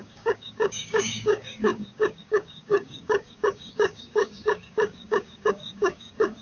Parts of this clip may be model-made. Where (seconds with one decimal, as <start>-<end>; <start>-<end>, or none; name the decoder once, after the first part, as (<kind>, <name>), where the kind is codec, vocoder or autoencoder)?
0.0-6.4 (codec, DAC)